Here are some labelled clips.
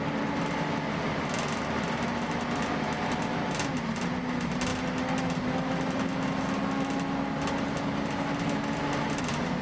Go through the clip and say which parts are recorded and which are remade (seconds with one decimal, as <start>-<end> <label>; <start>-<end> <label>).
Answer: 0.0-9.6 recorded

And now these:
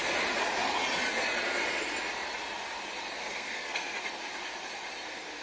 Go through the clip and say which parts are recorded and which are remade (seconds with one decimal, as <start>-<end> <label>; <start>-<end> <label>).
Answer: 0.0-3.2 recorded; 3.2-4.0 remade; 4.0-5.4 recorded

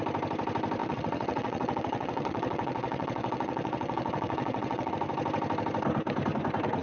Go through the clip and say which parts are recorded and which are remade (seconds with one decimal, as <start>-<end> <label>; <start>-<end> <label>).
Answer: 0.0-0.8 recorded; 0.8-4.9 remade; 4.9-6.8 recorded

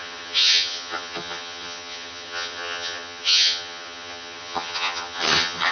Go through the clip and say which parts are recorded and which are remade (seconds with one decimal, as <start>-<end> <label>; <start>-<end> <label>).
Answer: 0.0-5.7 remade